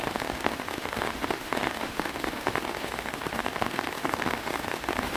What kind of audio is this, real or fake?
fake